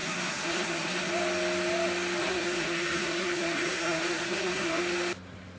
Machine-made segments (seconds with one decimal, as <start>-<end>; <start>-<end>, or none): 0.0-1.1; 2.2-4.8